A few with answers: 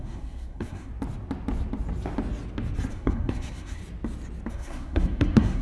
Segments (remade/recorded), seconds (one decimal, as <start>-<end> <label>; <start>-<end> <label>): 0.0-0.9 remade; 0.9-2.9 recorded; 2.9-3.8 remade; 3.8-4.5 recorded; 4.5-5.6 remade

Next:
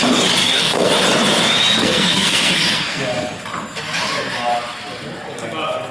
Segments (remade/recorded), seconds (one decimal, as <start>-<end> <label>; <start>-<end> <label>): 0.0-0.4 recorded; 0.4-0.9 remade; 0.9-1.8 recorded; 1.8-3.0 remade; 3.0-5.9 recorded

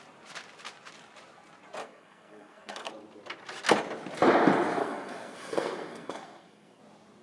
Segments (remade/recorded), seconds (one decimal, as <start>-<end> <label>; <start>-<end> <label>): 0.0-1.8 recorded; 1.8-2.9 remade; 2.9-4.8 recorded; 4.8-6.8 remade; 6.8-7.2 recorded

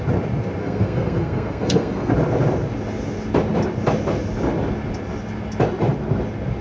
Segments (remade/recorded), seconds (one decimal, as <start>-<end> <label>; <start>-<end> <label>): 0.0-0.6 recorded; 0.6-2.1 remade; 2.1-6.6 recorded

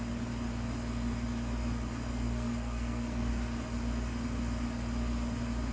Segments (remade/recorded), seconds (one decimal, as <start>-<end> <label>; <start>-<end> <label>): 0.0-2.1 recorded; 2.1-3.3 remade; 3.3-5.7 recorded

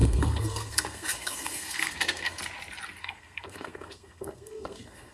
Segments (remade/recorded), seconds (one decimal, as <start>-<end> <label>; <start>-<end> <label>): 0.0-2.4 remade; 2.4-3.0 recorded; 3.0-5.1 remade